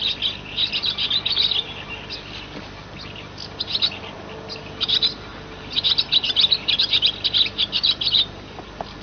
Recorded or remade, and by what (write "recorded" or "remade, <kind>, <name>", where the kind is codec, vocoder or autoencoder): recorded